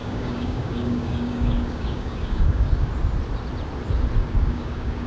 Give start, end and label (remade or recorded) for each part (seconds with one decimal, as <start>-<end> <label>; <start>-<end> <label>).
0.0-2.9 remade; 2.9-4.2 recorded; 4.2-5.1 remade